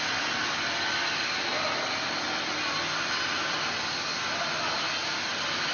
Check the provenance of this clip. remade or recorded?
recorded